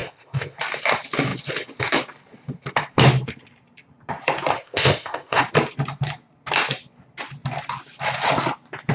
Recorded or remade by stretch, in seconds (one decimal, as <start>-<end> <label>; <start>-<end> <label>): 0.0-0.6 remade; 0.6-4.5 recorded; 4.5-5.4 remade; 5.4-8.9 recorded